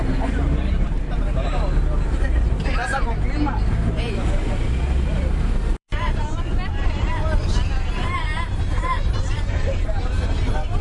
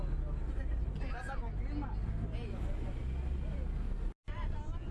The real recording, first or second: second